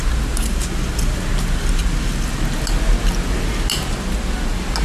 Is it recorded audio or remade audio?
recorded